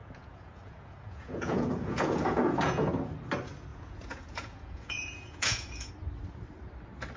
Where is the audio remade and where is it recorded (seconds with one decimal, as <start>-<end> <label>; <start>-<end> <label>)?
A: 0.0-2.9 remade; 2.9-3.7 recorded; 3.7-5.9 remade; 5.9-7.2 recorded